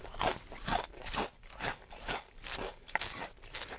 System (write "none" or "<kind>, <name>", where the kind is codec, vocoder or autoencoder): none